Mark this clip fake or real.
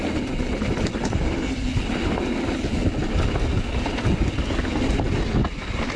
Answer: real